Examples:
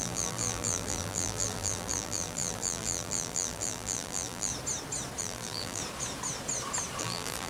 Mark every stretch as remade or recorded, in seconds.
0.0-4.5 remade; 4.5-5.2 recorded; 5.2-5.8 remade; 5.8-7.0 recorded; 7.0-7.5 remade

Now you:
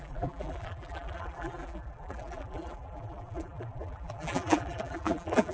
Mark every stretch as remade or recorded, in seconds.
0.0-5.5 remade

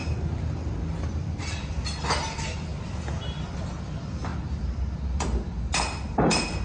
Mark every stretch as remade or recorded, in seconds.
0.0-1.3 recorded; 1.3-4.3 remade; 4.3-6.6 recorded

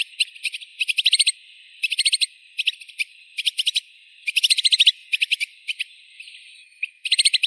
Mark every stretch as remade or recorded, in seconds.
0.0-0.7 recorded; 0.7-3.8 remade; 3.8-7.5 recorded